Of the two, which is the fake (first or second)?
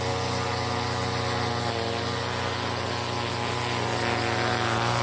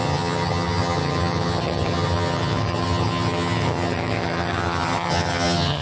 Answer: second